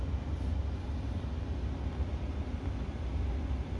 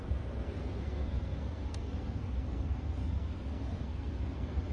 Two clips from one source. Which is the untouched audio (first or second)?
first